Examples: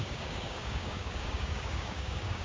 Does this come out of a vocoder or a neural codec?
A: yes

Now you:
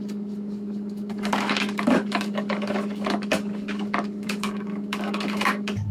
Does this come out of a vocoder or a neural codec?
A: yes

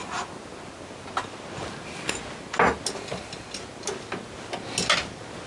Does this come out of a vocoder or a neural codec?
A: no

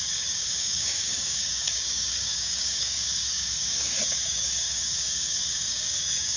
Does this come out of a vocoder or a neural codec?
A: yes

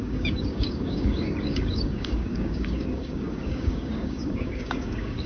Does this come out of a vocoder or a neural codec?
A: yes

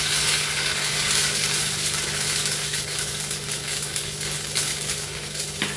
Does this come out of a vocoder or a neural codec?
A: yes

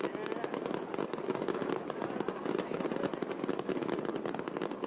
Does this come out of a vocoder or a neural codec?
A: no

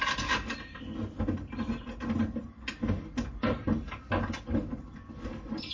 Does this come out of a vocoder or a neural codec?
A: no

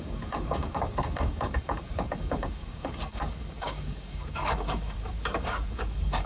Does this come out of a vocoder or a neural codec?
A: yes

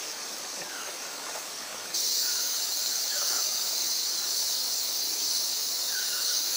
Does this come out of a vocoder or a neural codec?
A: yes